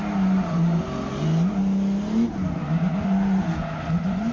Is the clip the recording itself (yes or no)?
yes